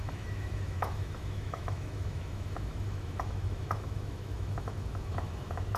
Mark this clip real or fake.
fake